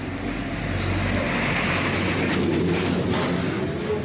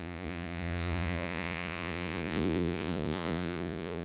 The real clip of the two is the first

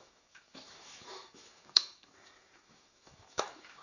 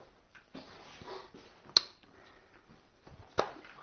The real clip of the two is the second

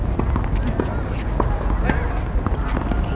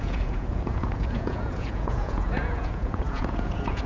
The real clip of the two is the first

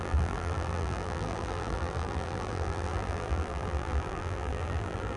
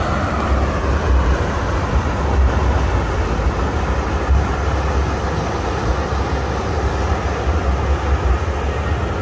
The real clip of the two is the second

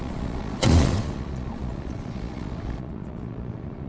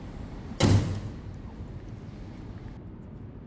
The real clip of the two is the second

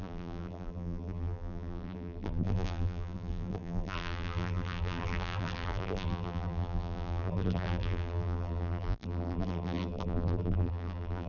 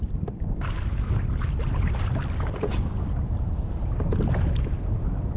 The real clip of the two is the second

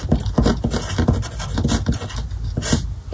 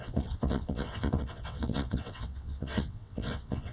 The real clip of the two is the first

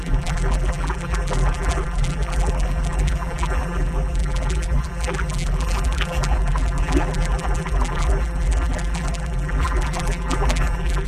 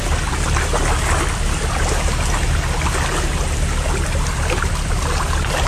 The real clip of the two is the second